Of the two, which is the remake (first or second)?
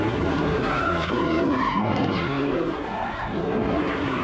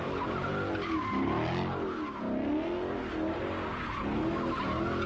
first